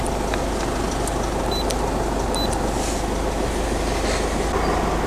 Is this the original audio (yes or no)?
yes